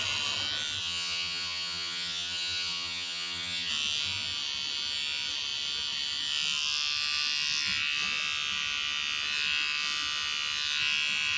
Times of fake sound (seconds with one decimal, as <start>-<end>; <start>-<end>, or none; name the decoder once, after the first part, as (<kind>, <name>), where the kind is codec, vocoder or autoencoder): 0.8-3.7 (vocoder, HiFi-GAN)

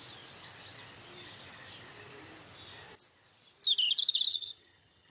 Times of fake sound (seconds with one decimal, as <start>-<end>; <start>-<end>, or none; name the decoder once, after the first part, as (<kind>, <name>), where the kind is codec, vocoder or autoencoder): 4.3-5.1 (vocoder, HiFi-GAN)

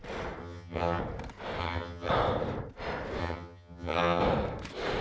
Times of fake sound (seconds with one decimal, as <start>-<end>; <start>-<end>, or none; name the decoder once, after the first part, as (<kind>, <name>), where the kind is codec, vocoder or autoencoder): 0.4-1.0 (vocoder, HiFi-GAN); 1.6-2.1; 3.2-4.2

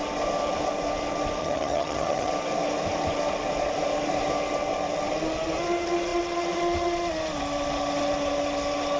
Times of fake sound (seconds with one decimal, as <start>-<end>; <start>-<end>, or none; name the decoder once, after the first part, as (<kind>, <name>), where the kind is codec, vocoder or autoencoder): 1.4-2.3 (vocoder, HiFi-GAN)

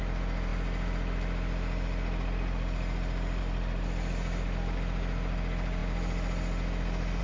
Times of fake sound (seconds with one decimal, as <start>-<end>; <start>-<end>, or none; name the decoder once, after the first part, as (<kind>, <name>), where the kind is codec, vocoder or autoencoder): none

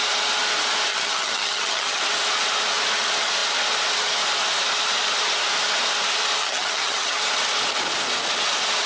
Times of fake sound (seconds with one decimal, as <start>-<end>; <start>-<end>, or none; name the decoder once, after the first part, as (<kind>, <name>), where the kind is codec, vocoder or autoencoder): 0.9-2.0 (vocoder, HiFi-GAN); 6.4-7.2

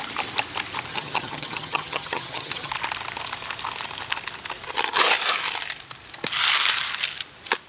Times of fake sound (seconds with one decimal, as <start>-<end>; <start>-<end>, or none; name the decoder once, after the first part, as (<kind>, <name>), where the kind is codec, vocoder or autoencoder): 0.9-2.7 (vocoder, HiFi-GAN)

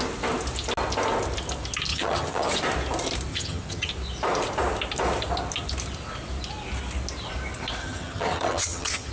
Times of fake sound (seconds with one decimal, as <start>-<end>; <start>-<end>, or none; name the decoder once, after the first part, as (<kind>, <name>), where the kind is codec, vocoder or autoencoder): 1.9-2.6 (vocoder, HiFi-GAN); 3.3-3.9; 7.8-9.1